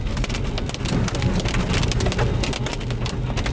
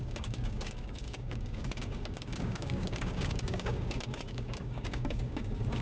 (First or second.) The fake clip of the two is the second